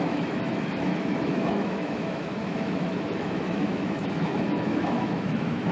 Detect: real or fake fake